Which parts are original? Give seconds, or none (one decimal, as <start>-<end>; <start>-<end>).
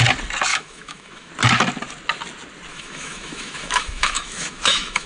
0.0-0.5; 1.3-2.7